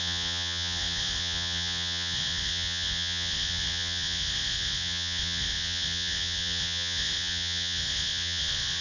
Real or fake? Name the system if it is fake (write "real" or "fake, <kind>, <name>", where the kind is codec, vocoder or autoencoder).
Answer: fake, vocoder, Vocos